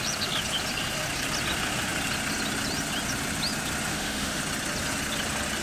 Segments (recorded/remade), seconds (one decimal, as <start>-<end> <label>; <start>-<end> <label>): 0.0-3.9 recorded; 3.9-4.4 remade; 4.4-5.6 recorded